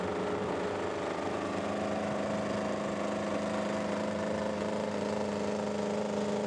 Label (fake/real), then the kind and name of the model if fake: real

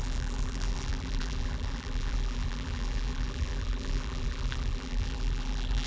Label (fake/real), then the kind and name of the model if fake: fake, vocoder, BigVGAN v2